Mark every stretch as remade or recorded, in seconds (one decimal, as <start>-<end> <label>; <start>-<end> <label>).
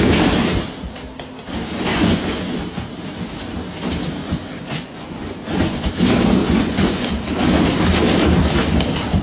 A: 0.0-1.9 recorded; 1.9-2.6 remade; 2.6-4.2 recorded; 4.2-5.9 remade; 5.9-6.4 recorded; 6.4-7.1 remade; 7.1-9.2 recorded